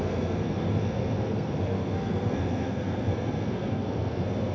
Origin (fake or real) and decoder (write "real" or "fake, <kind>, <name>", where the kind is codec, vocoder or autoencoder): fake, codec, SNAC